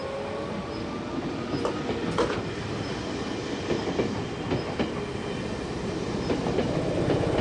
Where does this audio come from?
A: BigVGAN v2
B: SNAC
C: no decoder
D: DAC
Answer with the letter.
C